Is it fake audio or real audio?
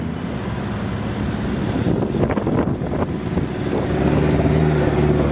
real